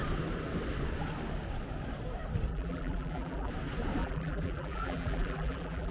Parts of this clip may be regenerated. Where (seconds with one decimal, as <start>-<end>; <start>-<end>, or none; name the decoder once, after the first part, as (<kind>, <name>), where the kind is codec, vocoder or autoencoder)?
2.5-3.5 (vocoder, BigVGAN v2); 4.0-5.9